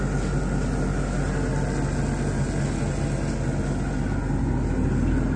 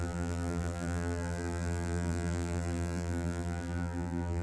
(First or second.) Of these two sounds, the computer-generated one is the second